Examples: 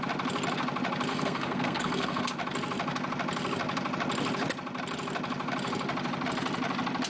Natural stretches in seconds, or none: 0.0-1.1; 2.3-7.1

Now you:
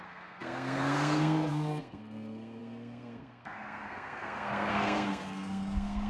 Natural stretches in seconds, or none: none

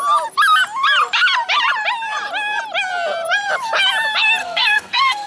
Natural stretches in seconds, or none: 0.0-4.4

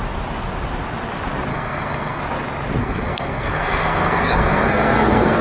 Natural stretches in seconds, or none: 0.0-1.5; 2.2-2.8

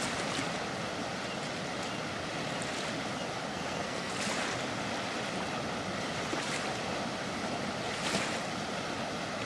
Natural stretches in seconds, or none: 0.0-3.5; 4.1-9.5

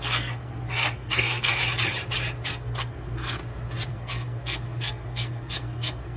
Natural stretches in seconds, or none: 1.6-2.5; 3.4-3.9

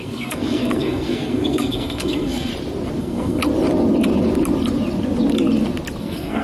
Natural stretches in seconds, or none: 2.5-3.0; 3.4-6.0